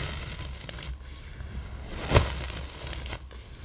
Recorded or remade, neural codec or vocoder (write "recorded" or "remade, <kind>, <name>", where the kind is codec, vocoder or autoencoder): recorded